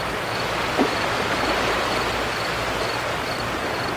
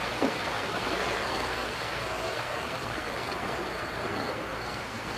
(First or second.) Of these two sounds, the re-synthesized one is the second